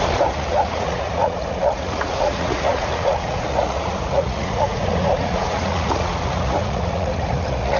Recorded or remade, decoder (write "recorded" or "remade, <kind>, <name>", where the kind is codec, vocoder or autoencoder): remade, vocoder, Vocos